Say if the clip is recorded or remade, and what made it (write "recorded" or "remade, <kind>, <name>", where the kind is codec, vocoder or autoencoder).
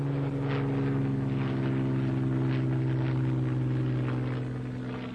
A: recorded